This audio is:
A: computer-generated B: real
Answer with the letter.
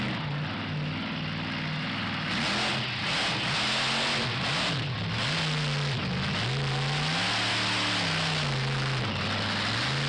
B